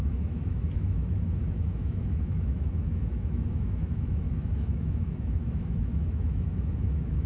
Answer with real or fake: fake